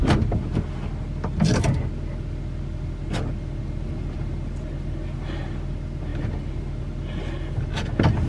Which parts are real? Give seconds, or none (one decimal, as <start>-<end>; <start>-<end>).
0.0-8.3